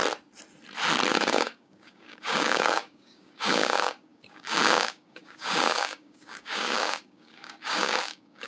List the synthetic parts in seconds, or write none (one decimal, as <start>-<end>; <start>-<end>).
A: 1.1-8.5